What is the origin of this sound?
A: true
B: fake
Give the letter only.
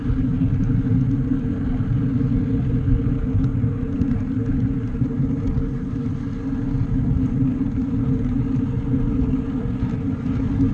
A